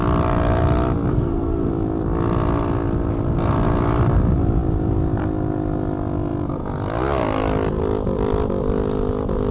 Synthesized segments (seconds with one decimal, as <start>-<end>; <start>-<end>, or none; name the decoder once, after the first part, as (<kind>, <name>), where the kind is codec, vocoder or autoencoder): 1.1-1.7 (codec, SNAC)